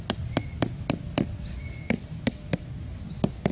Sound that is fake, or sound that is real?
real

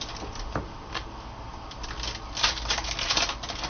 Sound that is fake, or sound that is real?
real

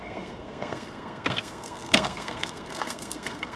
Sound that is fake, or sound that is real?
fake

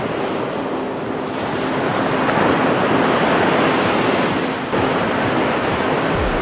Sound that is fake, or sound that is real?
real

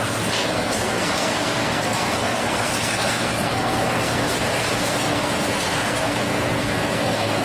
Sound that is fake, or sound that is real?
fake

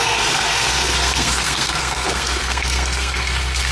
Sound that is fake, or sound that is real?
fake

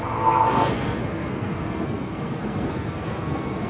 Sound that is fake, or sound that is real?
fake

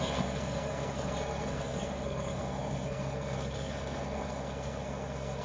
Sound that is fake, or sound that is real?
fake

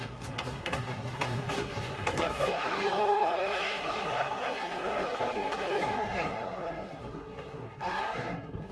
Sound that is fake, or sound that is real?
fake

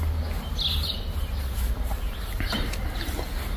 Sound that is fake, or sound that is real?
real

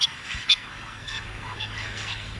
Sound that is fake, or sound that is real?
fake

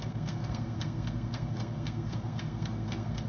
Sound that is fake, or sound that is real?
fake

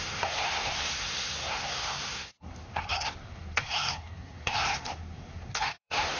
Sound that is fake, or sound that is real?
fake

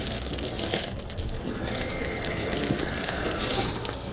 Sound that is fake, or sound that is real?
fake